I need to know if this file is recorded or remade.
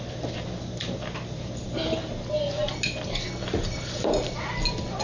recorded